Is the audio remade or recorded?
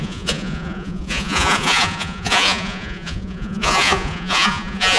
remade